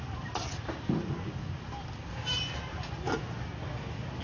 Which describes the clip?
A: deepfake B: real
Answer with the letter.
B